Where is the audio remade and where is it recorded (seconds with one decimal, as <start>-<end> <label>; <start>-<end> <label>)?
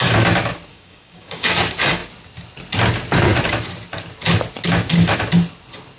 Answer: 0.0-0.7 recorded; 0.7-1.5 remade; 1.5-6.0 recorded